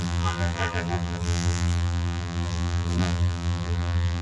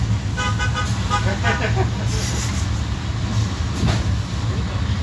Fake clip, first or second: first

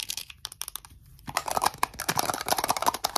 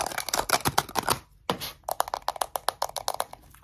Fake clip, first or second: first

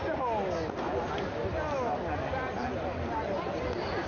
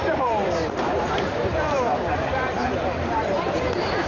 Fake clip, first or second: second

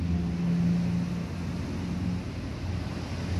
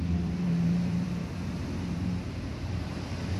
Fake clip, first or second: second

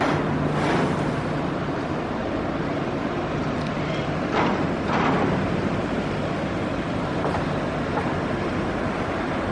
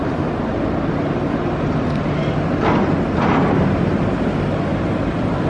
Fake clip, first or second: first